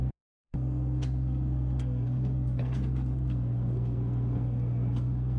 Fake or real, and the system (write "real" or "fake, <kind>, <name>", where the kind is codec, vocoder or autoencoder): fake, codec, SNAC